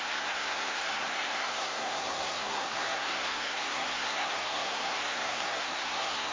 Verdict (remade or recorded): remade